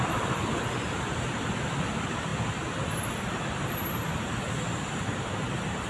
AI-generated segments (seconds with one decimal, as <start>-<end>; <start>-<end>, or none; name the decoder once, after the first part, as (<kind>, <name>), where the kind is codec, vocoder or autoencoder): none